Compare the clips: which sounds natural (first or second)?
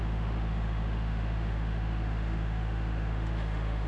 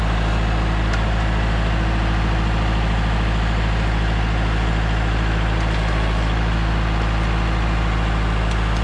second